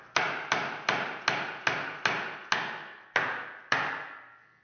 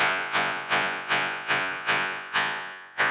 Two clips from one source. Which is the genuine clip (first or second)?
first